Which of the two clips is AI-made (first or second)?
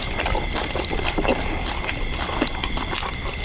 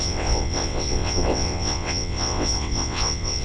second